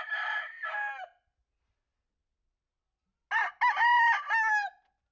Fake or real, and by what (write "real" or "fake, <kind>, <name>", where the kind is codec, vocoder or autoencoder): real